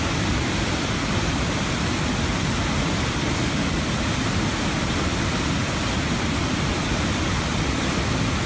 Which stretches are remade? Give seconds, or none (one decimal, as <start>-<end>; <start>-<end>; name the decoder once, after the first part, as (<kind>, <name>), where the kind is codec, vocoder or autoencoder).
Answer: none